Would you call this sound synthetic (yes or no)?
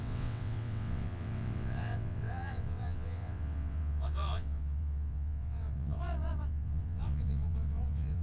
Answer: yes